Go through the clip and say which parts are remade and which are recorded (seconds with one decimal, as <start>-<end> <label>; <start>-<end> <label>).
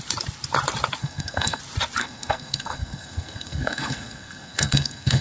0.0-1.0 recorded; 1.0-1.6 remade; 1.6-2.0 recorded; 2.0-5.2 remade